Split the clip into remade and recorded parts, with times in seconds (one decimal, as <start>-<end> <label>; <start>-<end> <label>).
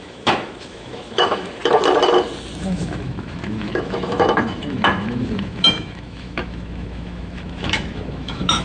0.0-1.6 remade; 1.6-2.6 recorded; 2.6-8.6 remade